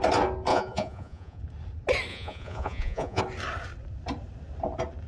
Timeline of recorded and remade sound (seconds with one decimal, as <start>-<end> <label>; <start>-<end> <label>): 0.0-0.5 recorded; 0.5-1.4 remade; 1.4-2.1 recorded; 2.1-3.2 remade; 3.2-5.1 recorded